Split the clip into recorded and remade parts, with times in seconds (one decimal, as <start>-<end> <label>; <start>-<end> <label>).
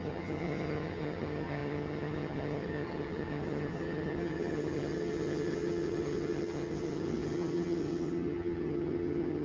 0.0-9.4 remade